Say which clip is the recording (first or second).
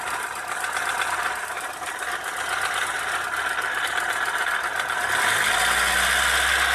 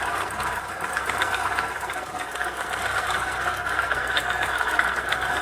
first